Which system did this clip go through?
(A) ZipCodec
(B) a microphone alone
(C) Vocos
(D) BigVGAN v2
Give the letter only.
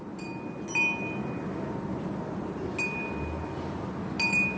B